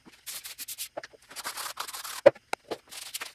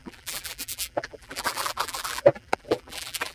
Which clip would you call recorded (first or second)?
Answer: first